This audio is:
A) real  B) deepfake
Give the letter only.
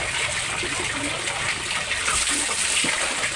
A